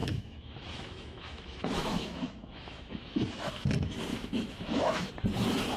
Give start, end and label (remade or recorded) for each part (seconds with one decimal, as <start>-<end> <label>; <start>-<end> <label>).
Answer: 0.0-3.5 remade; 3.5-4.1 recorded; 4.1-5.1 remade; 5.1-5.8 recorded